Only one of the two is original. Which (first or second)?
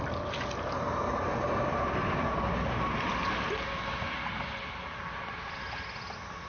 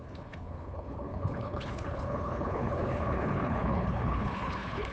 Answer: first